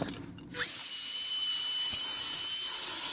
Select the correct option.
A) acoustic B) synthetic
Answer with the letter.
A